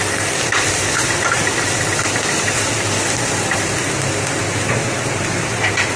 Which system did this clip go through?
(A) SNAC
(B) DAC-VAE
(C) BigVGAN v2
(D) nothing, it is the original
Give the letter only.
D